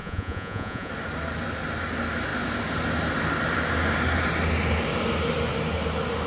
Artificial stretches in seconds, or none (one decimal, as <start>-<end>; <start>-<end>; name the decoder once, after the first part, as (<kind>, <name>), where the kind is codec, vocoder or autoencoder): 0.0-0.9 (vocoder, Vocos)